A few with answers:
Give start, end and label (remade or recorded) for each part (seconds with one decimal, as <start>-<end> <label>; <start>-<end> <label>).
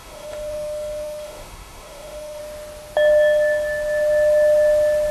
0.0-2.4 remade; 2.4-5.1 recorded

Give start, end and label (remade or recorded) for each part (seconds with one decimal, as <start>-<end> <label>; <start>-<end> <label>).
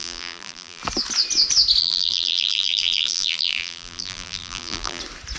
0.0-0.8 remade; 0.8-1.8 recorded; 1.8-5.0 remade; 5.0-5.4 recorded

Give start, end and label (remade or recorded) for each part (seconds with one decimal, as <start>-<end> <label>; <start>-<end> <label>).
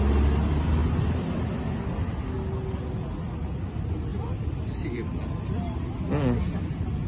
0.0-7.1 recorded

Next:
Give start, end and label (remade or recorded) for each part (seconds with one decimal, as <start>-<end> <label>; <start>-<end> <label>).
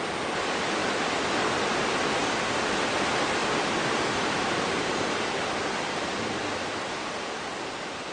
0.0-0.8 recorded; 0.8-1.3 remade; 1.3-3.4 recorded; 3.4-6.4 remade; 6.4-8.1 recorded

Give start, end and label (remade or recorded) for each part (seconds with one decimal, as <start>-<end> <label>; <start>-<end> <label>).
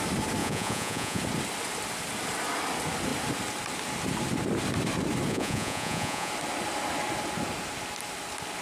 0.0-0.4 recorded; 0.4-1.2 remade; 1.2-5.3 recorded; 5.3-6.3 remade; 6.3-8.6 recorded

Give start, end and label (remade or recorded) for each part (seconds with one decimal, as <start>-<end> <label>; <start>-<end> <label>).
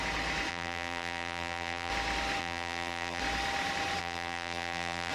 0.0-0.5 recorded; 0.5-1.9 remade; 1.9-2.4 recorded; 2.4-3.2 remade; 3.2-4.0 recorded; 4.0-5.1 remade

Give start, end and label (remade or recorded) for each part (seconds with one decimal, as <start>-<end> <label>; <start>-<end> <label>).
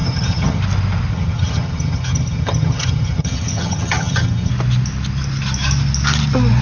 0.0-0.6 remade; 0.6-1.1 recorded; 1.1-4.5 remade; 4.5-6.6 recorded